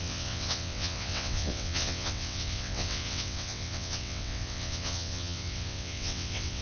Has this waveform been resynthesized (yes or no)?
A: yes